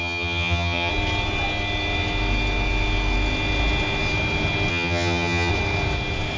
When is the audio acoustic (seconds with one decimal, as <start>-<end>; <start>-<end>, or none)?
0.9-4.7; 5.5-6.4